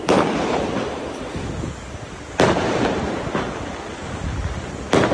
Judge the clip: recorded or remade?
recorded